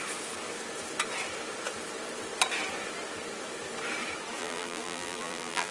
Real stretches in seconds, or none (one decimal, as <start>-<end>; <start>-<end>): 0.0-4.4

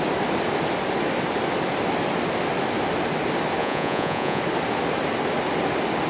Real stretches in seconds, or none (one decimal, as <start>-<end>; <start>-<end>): 0.0-3.6; 4.4-6.1

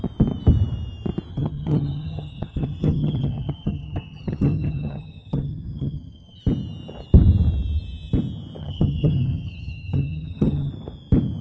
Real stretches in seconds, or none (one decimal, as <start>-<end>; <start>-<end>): 0.0-1.3; 6.4-8.6; 10.7-11.4

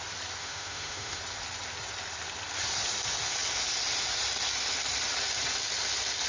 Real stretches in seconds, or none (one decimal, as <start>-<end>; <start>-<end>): 0.0-0.4; 1.2-6.3

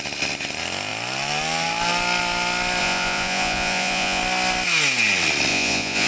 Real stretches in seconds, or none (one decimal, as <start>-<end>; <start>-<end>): 0.0-2.8; 4.2-5.5

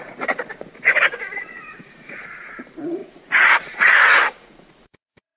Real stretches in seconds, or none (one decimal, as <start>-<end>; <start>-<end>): none

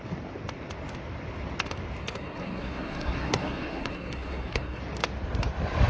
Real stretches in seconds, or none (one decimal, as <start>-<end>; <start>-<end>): 0.0-2.0; 4.8-5.9